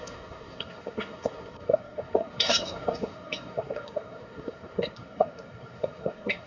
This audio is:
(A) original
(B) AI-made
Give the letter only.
B